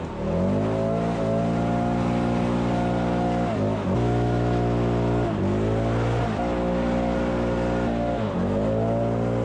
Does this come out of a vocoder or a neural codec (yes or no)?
no